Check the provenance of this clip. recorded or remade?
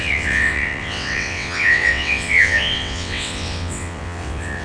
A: remade